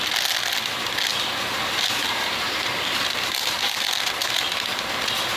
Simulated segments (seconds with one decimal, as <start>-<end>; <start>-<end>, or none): 1.1-3.9